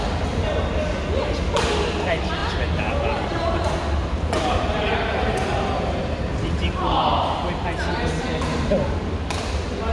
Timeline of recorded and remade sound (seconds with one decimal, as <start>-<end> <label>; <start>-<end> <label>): 0.0-4.7 recorded; 4.7-8.7 remade; 8.7-9.9 recorded